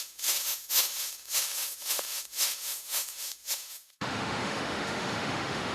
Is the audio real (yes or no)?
no